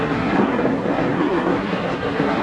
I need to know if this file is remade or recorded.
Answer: remade